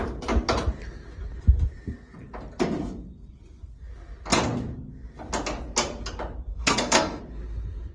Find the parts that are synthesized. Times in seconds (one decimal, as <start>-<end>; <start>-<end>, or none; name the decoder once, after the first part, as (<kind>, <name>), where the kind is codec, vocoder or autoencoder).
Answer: 6.5-7.2 (codec, SNAC)